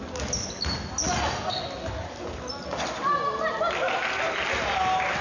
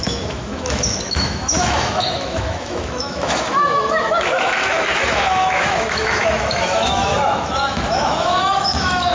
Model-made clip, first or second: second